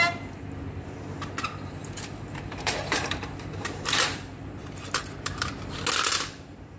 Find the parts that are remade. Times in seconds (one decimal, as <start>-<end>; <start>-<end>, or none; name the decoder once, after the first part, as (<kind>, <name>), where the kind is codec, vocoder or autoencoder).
1.8-5.8 (vocoder, BigVGAN v2)

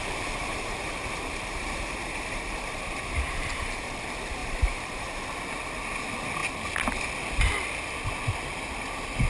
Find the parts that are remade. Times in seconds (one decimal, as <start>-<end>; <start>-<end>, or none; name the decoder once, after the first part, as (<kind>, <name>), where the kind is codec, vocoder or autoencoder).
0.4-3.8 (vocoder, BigVGAN v2); 4.4-5.0

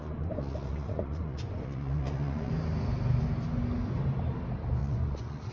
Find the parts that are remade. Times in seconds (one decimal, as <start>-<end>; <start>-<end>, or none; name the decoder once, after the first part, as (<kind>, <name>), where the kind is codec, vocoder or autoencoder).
0.0-2.5 (vocoder, Vocos); 4.8-5.5

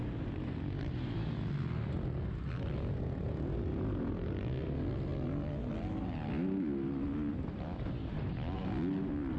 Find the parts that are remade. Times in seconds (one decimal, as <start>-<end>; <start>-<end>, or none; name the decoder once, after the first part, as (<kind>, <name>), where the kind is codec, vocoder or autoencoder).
none

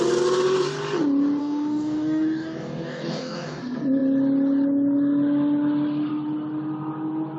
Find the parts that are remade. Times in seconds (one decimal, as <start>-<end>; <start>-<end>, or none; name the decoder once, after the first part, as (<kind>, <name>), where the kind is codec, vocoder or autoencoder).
1.4-3.6 (codec, DAC)

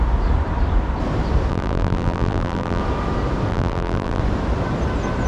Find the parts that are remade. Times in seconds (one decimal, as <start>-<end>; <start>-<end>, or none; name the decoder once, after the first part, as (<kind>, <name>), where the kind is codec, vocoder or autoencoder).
1.5-2.8 (vocoder, BigVGAN v2); 3.5-4.2

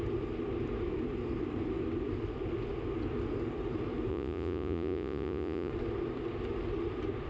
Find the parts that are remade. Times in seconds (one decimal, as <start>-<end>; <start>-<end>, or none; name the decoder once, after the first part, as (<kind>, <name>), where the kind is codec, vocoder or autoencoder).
4.1-5.7 (vocoder, Vocos)